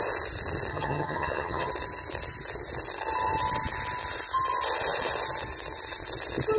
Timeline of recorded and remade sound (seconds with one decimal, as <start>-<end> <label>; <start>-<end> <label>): 0.0-0.7 recorded; 0.7-1.7 remade; 1.7-6.6 recorded

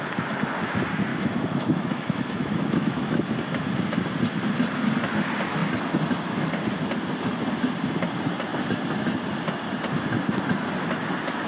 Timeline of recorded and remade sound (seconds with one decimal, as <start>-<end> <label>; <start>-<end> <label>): 0.0-1.1 recorded; 1.1-3.2 remade; 3.2-11.5 recorded